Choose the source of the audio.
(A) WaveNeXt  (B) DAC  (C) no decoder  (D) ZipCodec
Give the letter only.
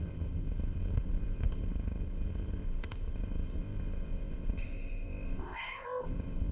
D